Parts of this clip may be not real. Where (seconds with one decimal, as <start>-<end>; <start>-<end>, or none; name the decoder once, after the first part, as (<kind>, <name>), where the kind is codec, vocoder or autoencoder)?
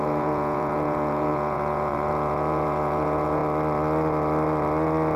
0.0-3.4 (vocoder, Vocos)